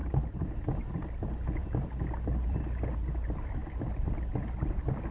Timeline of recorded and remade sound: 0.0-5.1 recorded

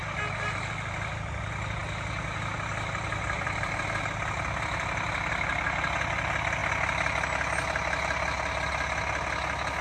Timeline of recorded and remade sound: 0.0-9.8 recorded

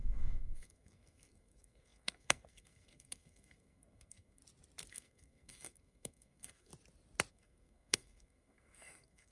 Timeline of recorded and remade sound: 0.0-4.4 remade; 4.4-4.9 recorded; 4.9-6.7 remade; 6.7-7.3 recorded; 7.3-9.3 remade

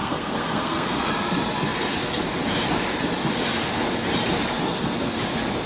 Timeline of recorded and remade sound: 0.0-1.1 remade; 1.1-5.7 recorded

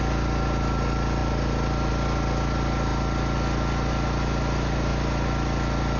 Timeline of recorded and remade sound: 0.0-6.0 recorded

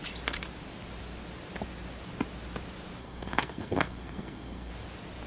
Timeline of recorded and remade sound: 0.0-3.0 recorded; 3.0-4.7 remade; 4.7-5.3 recorded

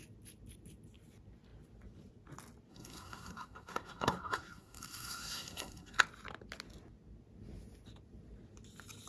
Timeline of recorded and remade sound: 0.0-2.7 recorded; 2.7-6.0 remade; 6.0-9.1 recorded

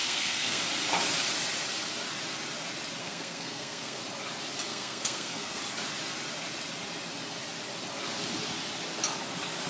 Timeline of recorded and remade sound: 0.0-0.6 remade; 0.6-3.0 recorded; 3.0-4.0 remade; 4.0-4.7 recorded; 4.7-5.6 remade; 5.6-9.7 recorded